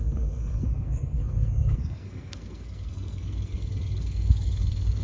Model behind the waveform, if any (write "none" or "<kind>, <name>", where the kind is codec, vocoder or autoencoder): codec, SNAC